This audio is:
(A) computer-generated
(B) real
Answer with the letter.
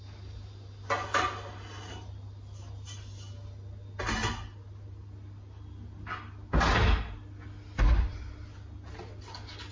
B